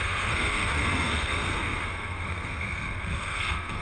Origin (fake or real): fake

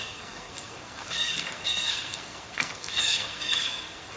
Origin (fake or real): fake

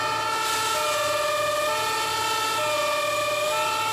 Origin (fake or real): real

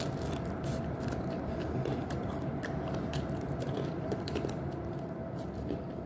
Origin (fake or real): fake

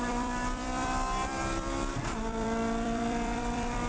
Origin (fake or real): fake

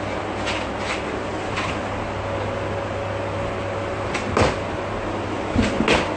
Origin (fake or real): real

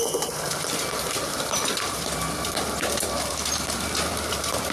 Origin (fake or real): fake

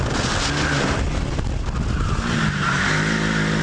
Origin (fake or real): real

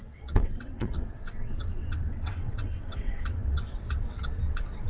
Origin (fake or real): fake